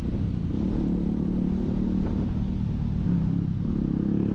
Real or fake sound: real